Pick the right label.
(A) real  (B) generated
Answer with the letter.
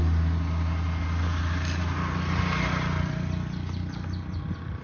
A